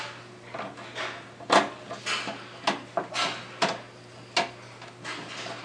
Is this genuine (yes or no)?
yes